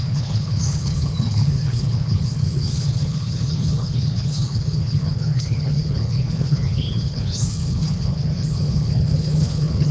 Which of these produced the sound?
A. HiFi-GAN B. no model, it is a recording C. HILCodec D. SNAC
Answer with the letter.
C